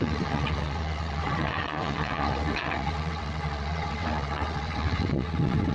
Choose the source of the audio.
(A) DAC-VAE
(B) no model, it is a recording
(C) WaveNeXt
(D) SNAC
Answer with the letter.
C